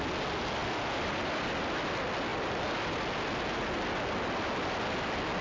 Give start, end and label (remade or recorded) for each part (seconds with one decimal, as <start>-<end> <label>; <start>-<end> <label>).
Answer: 0.0-5.4 recorded